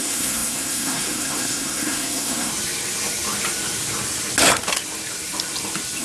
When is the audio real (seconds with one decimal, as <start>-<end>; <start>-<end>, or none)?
2.5-6.0